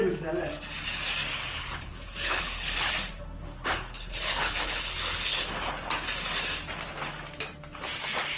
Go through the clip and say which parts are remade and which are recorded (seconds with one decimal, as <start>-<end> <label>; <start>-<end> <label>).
0.0-1.3 recorded; 1.3-2.9 remade; 2.9-3.5 recorded; 3.5-5.7 remade; 5.7-8.4 recorded